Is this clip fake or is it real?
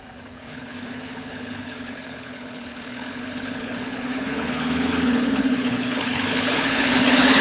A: fake